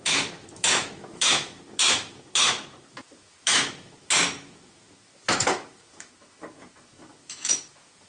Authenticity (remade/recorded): remade